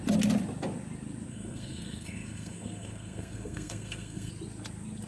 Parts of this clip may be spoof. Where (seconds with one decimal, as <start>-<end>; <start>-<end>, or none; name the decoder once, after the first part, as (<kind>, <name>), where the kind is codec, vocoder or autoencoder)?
1.3-4.3 (codec, SNAC)